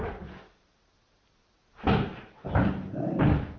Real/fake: real